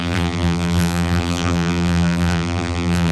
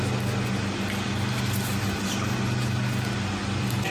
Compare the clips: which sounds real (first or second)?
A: second